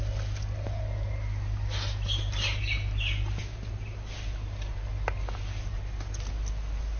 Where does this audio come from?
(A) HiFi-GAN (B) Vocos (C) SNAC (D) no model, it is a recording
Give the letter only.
D